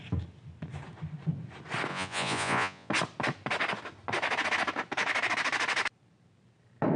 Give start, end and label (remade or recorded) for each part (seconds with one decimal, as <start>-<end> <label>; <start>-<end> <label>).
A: 0.0-1.9 recorded; 1.9-2.9 remade; 2.9-7.0 recorded